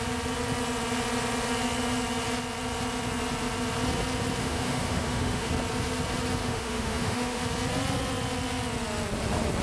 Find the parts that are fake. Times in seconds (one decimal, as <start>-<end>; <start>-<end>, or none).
4.4-5.5; 6.4-7.4